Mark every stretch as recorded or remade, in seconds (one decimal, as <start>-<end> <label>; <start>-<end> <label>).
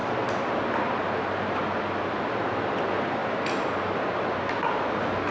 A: 0.0-5.3 recorded